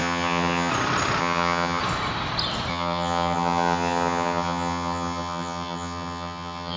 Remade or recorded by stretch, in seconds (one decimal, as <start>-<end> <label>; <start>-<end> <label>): 0.0-0.7 remade; 0.7-1.2 recorded; 1.2-1.8 remade; 1.8-2.7 recorded; 2.7-6.8 remade